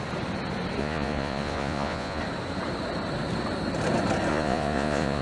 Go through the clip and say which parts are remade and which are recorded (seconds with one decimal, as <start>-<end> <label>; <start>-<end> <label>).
0.0-0.8 recorded; 0.8-2.2 remade; 2.2-4.3 recorded; 4.3-5.2 remade